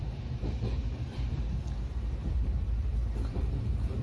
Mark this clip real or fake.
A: fake